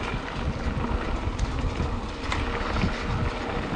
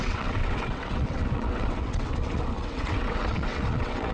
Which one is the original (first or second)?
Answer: first